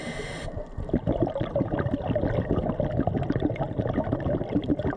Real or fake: real